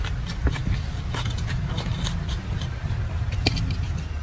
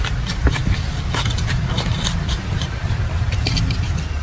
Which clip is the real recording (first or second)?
first